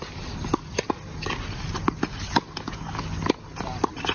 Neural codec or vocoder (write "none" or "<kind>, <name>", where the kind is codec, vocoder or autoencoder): none